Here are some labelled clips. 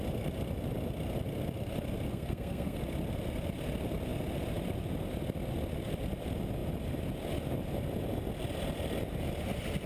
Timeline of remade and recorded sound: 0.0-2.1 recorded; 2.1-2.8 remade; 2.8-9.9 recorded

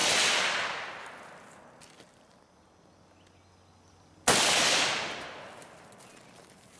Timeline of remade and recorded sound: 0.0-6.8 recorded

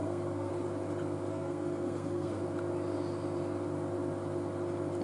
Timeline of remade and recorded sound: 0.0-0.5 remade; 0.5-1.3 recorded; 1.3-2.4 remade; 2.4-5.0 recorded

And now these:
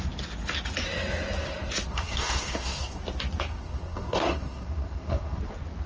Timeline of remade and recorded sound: 0.0-1.9 recorded; 1.9-3.0 remade; 3.0-3.5 recorded; 3.5-5.4 remade; 5.4-5.9 recorded